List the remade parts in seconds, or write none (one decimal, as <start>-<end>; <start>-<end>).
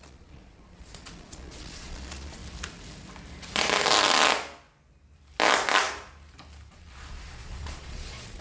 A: 0.0-2.4; 6.7-8.4